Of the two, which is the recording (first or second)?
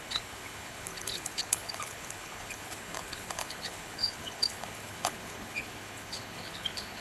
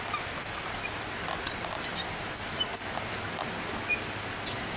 second